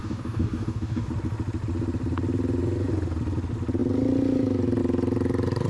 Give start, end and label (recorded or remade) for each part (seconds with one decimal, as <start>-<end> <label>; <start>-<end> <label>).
0.0-1.1 remade; 1.1-5.7 recorded